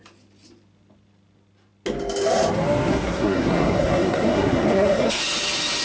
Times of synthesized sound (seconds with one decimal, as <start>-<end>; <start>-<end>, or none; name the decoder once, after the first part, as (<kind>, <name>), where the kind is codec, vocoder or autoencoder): 2.9-5.2 (codec, SNAC)